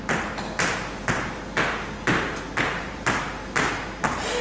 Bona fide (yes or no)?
yes